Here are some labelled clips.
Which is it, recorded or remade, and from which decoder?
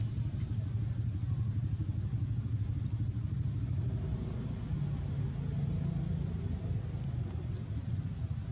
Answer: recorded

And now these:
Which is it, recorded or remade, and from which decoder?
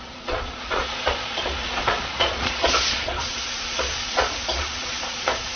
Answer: remade, vocoder, Vocos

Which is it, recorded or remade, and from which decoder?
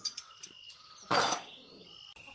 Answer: recorded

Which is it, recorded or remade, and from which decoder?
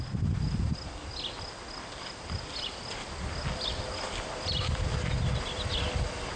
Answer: recorded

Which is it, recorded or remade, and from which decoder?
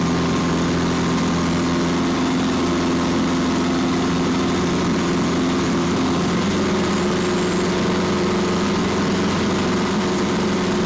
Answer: recorded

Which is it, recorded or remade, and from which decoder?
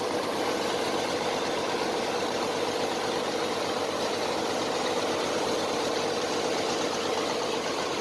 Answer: recorded